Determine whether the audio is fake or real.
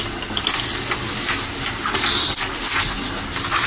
real